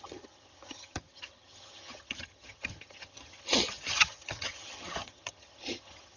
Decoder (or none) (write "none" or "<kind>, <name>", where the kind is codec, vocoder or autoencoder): vocoder, HiFi-GAN